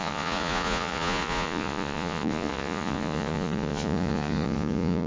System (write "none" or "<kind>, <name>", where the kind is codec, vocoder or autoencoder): vocoder, Vocos